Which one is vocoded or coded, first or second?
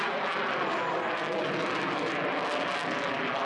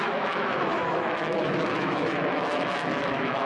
second